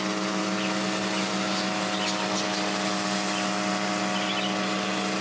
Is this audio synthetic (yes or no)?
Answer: no